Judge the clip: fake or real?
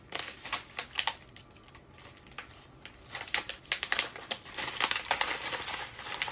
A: real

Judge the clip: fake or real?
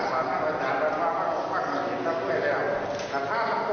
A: real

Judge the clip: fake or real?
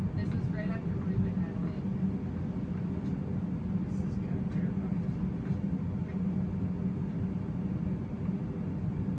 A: real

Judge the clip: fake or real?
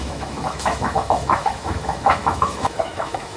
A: fake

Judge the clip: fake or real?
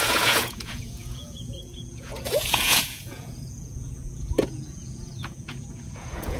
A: fake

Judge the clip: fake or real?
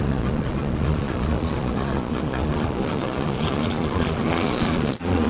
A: fake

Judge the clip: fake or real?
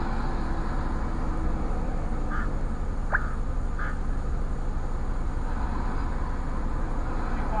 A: real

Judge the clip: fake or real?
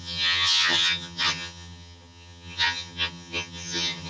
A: fake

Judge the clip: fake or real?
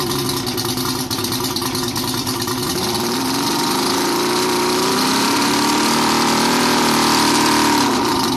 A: fake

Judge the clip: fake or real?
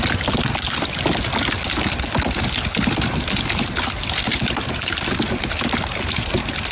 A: real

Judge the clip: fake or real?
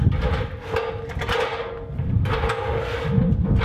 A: real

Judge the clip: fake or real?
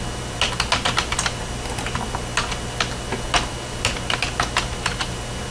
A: real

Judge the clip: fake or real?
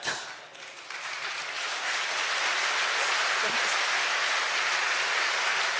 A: real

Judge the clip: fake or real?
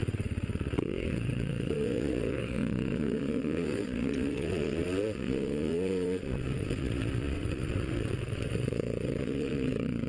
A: fake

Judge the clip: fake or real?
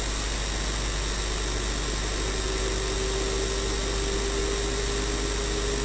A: real